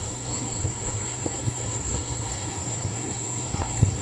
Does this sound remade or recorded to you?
remade